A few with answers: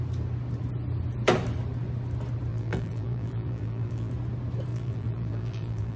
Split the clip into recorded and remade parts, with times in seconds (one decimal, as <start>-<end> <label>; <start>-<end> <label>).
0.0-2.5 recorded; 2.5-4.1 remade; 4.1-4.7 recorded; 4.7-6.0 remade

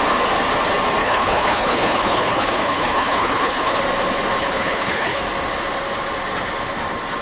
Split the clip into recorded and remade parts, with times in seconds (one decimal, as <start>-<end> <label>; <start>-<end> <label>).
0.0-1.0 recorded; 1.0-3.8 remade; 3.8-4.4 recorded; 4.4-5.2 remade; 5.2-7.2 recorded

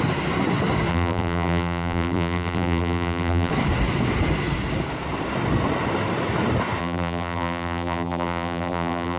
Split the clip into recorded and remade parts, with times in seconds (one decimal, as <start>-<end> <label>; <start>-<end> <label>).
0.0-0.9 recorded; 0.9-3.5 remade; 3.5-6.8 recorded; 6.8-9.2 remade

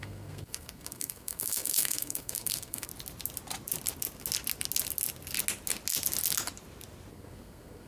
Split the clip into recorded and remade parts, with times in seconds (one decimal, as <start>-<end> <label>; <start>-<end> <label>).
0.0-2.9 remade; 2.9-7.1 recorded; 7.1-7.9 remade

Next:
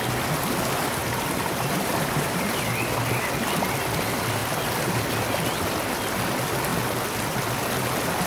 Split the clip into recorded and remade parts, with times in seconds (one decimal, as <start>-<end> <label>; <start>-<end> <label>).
0.0-1.0 recorded; 1.0-2.6 remade; 2.6-8.3 recorded

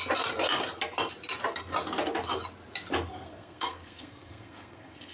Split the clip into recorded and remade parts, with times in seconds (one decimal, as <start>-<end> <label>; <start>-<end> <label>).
0.0-3.1 recorded; 3.1-5.1 remade

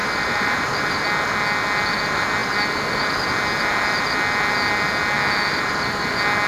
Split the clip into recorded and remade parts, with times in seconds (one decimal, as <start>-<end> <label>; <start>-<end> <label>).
0.0-0.7 remade; 0.7-6.5 recorded